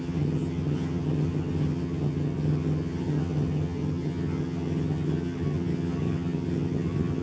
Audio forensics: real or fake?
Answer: fake